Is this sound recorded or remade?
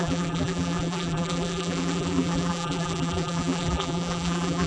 remade